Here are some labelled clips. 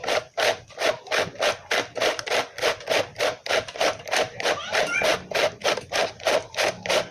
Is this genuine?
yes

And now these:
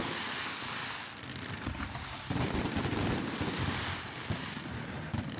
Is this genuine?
yes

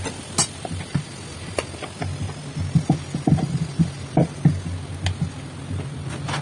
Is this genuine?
yes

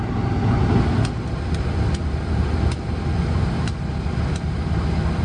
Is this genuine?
yes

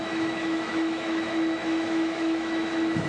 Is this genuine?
no